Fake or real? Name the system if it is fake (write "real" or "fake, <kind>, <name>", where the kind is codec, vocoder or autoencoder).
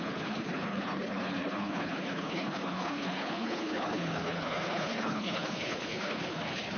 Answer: fake, codec, HILCodec